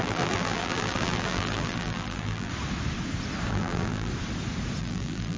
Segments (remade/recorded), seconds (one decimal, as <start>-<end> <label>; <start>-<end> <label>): 0.0-2.5 remade; 2.5-3.5 recorded; 3.5-4.1 remade; 4.1-4.8 recorded; 4.8-5.4 remade